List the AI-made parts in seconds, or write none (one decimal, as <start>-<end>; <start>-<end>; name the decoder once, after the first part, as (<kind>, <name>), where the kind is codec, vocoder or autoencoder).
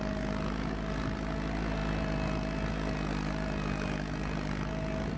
none